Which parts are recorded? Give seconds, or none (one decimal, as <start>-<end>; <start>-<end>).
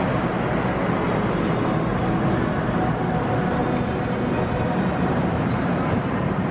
0.0-4.9; 5.6-6.5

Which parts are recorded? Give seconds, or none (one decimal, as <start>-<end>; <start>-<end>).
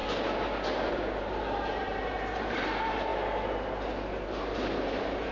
0.0-0.9; 3.1-4.1